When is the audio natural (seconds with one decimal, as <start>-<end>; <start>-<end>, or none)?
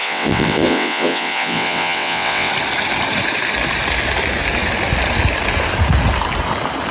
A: 2.5-6.9